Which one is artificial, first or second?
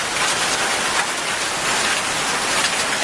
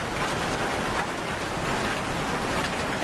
second